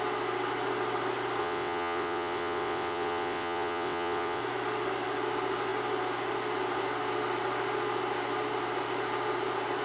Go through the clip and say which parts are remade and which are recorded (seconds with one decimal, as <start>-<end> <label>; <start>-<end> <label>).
0.0-1.4 recorded; 1.4-4.4 remade; 4.4-9.8 recorded